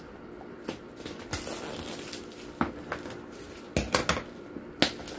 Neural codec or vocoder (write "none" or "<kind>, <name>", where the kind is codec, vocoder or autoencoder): none